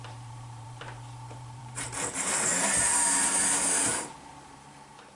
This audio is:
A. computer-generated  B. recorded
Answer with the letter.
A